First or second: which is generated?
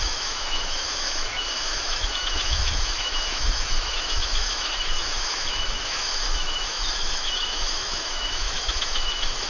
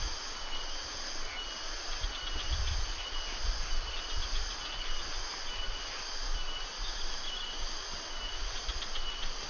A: first